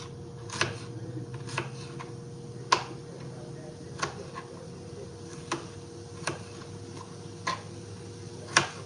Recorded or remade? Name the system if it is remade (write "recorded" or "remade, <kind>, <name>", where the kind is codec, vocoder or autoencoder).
recorded